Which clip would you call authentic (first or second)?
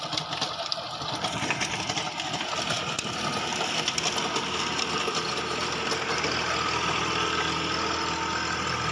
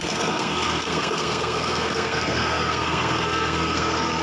first